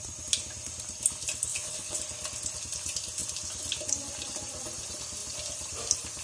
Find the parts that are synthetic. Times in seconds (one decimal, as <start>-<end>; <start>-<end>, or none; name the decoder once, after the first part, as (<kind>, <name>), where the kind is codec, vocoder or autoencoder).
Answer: 1.5-2.0 (vocoder, WaveNeXt)